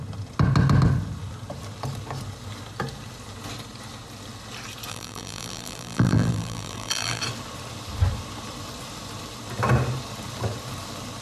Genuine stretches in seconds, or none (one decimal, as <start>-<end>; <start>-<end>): 0.0-4.9; 7.2-11.2